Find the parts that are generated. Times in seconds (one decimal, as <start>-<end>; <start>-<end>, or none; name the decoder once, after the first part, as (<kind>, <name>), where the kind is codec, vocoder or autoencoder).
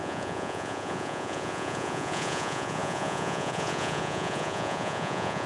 0.0-5.5 (vocoder, Vocos)